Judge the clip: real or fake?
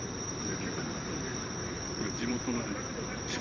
fake